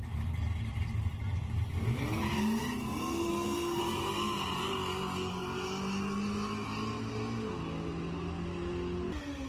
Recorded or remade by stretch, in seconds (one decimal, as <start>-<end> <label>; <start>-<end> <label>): 0.0-3.3 recorded; 3.3-3.8 remade; 3.8-9.5 recorded